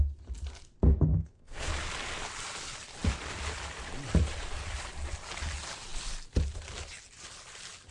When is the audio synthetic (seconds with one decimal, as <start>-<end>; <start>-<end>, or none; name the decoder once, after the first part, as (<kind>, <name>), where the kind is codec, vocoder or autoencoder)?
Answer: 1.1-1.7 (codec, SNAC)